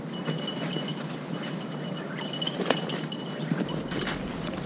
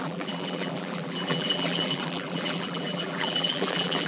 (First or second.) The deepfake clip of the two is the second